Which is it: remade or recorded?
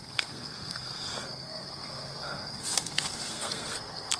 remade